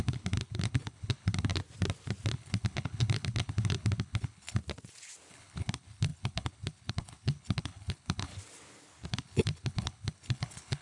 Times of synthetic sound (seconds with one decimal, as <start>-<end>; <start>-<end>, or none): 0.0-1.5; 2.3-4.6; 5.3-8.3; 9.1-10.8